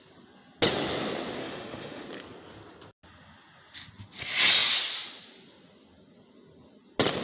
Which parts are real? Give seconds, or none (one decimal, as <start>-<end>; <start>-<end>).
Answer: 0.0-1.4; 2.0-7.2